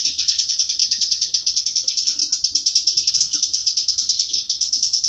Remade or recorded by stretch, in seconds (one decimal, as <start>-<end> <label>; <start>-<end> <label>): 0.0-2.2 remade; 2.2-3.1 recorded; 3.1-5.1 remade